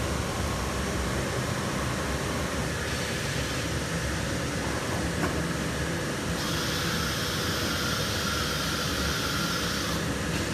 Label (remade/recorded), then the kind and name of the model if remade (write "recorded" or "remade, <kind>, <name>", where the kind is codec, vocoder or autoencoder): recorded